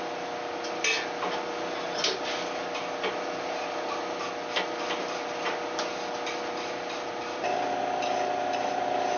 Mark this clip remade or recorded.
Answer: recorded